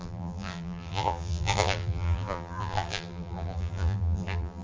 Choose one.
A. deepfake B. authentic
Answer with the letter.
A